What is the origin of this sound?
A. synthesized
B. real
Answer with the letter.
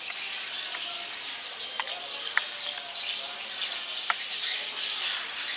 B